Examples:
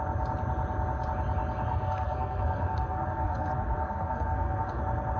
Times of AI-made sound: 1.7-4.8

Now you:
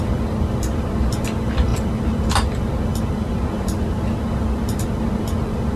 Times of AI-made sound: none

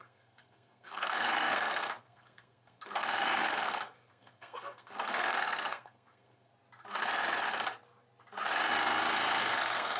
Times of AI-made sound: 0.0-6.5; 9.4-10.0

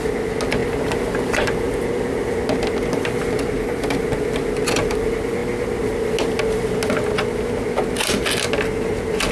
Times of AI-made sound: none